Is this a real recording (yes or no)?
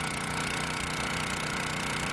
no